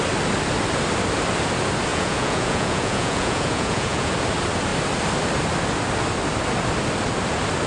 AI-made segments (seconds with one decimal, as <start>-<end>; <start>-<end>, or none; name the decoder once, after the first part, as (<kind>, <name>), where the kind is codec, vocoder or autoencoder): 1.9-4.1 (vocoder, Vocos)